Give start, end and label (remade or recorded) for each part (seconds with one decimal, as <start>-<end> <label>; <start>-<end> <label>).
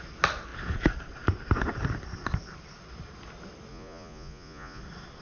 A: 0.0-3.7 recorded; 3.7-4.8 remade; 4.8-5.2 recorded